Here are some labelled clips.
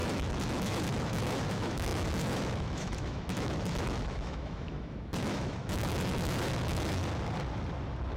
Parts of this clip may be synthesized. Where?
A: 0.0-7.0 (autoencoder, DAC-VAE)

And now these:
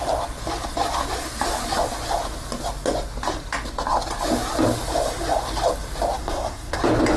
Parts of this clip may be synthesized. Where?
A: 6.2-6.8 (codec, SNAC)

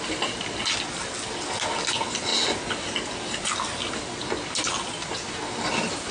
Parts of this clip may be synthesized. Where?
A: none

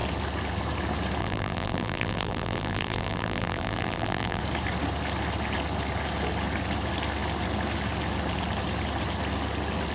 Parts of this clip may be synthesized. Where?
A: 1.2-4.4 (vocoder, BigVGAN v2)